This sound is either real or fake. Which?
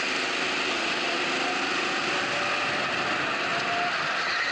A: real